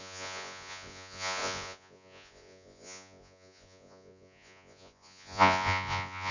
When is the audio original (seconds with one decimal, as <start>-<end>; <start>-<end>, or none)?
none

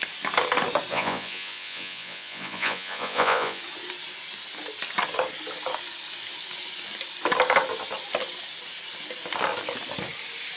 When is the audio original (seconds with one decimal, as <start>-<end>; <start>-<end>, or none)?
0.0-0.9; 3.6-10.6